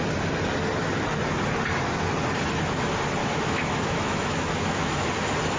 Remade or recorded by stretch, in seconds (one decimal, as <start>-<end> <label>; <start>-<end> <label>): 0.0-3.2 recorded; 3.2-5.1 remade; 5.1-5.6 recorded